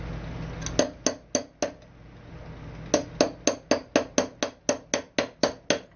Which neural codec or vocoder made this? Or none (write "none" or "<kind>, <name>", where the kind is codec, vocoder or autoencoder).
none